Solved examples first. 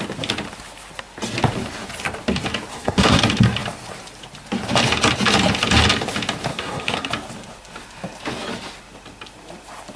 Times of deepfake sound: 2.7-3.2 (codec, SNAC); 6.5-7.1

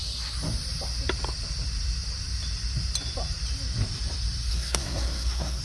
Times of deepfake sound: 4.5-5.6 (codec, SNAC)